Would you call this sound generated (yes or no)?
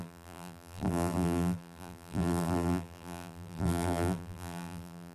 yes